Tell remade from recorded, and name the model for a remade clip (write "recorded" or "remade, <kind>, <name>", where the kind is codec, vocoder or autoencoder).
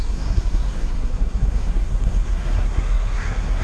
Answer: remade, codec, SNAC